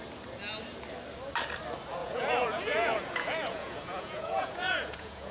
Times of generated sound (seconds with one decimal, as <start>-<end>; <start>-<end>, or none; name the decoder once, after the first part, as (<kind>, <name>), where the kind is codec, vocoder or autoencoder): 2.0-5.3 (vocoder, Vocos)